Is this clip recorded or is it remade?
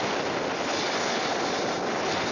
recorded